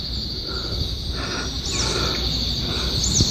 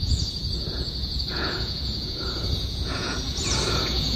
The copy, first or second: second